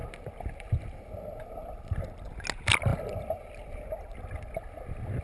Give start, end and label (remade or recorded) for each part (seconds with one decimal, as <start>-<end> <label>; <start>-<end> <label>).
0.0-5.2 recorded